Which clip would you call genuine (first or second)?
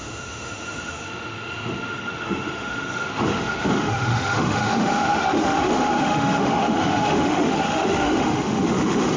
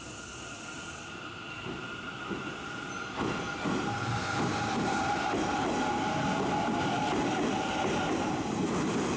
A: second